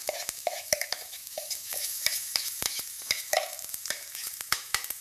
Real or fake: fake